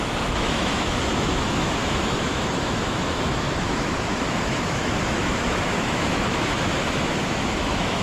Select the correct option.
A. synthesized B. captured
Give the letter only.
A